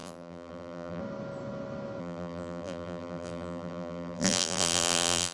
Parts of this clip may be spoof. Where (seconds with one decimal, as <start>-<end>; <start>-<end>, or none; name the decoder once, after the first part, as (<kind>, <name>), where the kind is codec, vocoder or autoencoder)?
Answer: 0.0-1.0 (vocoder, BigVGAN v2); 2.0-5.3

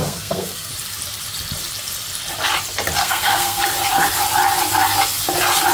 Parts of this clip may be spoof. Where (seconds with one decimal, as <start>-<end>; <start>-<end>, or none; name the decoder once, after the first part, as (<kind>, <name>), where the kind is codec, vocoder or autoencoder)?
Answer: 0.0-0.7 (codec, SNAC); 3.0-3.7

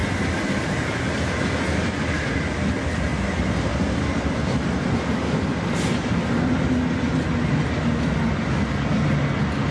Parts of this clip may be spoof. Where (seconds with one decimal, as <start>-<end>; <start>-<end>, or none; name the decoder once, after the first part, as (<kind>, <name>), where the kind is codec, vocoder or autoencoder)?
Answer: 0.0-0.5 (vocoder, BigVGAN v2)

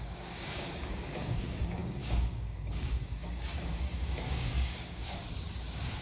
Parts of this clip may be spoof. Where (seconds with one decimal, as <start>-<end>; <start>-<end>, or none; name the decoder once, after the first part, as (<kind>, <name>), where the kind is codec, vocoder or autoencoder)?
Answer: 0.0-6.0 (codec, DAC)

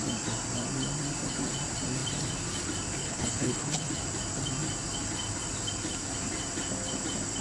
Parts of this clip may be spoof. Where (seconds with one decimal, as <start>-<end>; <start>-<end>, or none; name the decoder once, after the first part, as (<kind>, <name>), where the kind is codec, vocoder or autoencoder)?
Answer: 3.0-3.9 (codec, HILCodec)